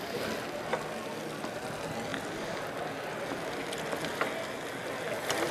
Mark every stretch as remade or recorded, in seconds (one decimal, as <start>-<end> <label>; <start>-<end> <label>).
0.0-5.5 recorded